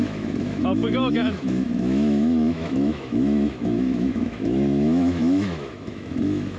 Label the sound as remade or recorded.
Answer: remade